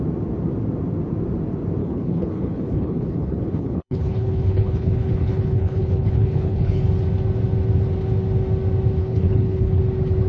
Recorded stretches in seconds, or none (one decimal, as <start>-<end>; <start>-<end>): 0.0-1.8; 6.8-9.0; 9.8-10.3

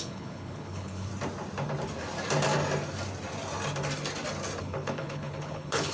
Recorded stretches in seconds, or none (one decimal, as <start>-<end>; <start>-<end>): 1.1-4.6

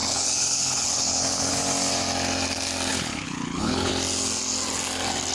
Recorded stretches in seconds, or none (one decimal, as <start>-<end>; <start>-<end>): 1.6-2.9; 3.9-5.3

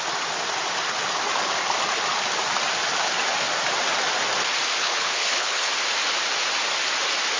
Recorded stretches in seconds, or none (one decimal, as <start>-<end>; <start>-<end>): 0.0-4.8; 5.7-7.4